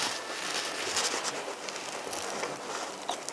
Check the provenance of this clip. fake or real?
real